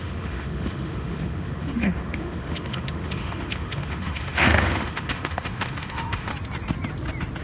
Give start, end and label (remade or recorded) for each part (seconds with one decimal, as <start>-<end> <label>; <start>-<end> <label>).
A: 0.0-6.3 remade; 6.3-7.4 recorded